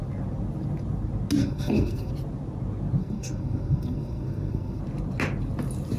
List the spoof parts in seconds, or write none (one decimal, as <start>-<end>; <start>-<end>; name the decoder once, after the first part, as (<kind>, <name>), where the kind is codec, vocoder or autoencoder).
1.4-2.1 (codec, SNAC); 3.0-4.8